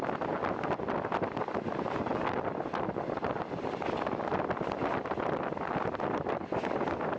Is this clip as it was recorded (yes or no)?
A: yes